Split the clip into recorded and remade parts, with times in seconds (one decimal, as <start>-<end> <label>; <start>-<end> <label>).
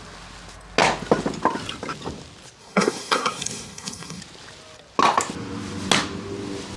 0.0-2.6 recorded; 2.6-4.2 remade; 4.2-6.8 recorded